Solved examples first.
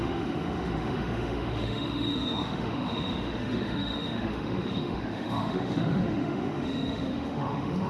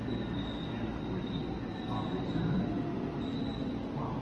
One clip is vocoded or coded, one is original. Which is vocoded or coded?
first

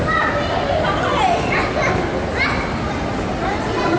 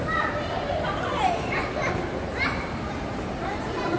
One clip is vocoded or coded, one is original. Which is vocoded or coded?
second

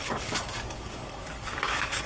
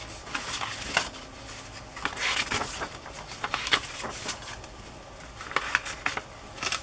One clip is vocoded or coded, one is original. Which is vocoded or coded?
first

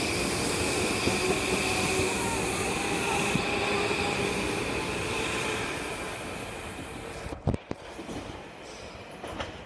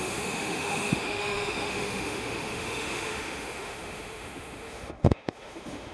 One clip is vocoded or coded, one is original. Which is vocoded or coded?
second